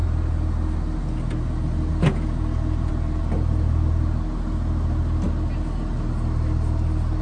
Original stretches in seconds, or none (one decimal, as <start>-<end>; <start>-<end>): 0.0-7.2